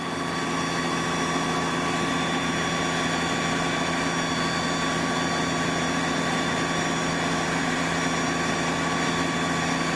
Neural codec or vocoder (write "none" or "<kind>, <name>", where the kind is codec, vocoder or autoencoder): none